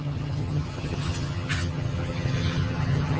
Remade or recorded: remade